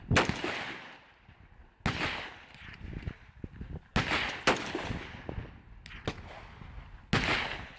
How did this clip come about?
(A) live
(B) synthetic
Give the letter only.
A